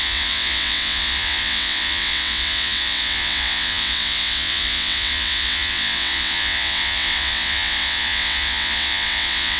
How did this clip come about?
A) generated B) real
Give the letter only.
A